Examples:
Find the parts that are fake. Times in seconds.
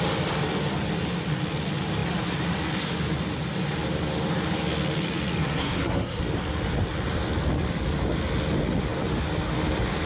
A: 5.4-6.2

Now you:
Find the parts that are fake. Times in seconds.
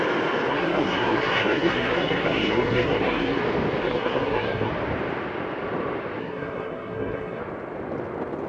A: 0.5-3.4; 3.8-4.7; 6.2-7.4